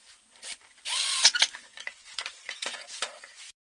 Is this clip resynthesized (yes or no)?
yes